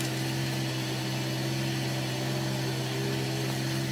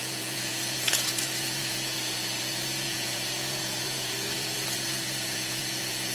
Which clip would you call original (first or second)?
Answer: first